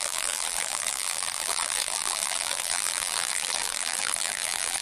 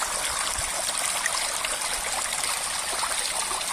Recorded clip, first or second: second